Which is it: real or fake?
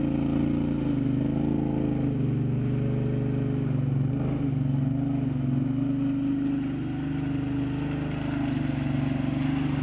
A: real